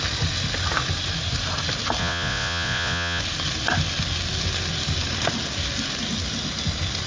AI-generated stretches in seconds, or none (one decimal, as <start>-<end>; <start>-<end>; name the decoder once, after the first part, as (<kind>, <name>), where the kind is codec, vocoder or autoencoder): 2.0-3.2 (vocoder, Vocos)